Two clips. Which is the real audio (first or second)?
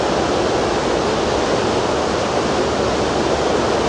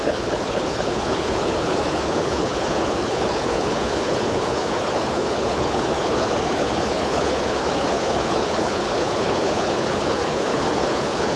first